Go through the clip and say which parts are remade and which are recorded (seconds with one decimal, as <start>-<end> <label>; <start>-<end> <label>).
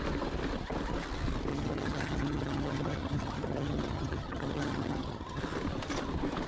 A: 0.0-1.5 recorded; 1.5-5.4 remade; 5.4-6.5 recorded